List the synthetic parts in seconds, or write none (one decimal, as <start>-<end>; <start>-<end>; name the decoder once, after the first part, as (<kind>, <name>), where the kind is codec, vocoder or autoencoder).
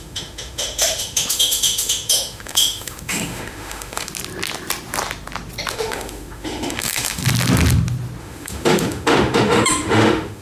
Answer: 0.0-4.1 (autoencoder, DAC-VAE); 5.7-7.2; 8.2-10.4